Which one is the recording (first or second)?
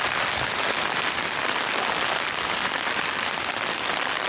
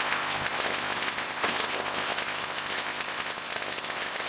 first